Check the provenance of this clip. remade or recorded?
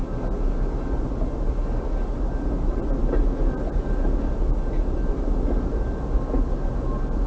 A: recorded